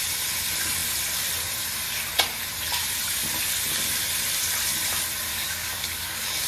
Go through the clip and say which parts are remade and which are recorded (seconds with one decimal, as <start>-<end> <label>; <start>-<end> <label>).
0.0-5.3 recorded; 5.3-6.5 remade